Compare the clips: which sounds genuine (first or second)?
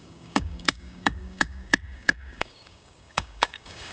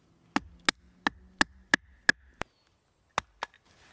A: second